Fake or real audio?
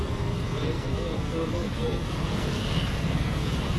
fake